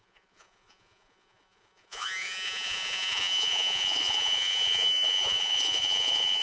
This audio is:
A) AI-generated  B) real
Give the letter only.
A